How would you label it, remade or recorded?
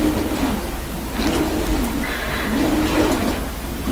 recorded